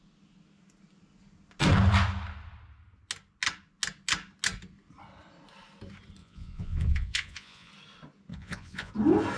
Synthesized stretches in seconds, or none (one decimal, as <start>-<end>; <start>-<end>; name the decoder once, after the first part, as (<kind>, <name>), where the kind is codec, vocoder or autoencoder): 6.2-7.7 (vocoder, Vocos); 8.3-8.9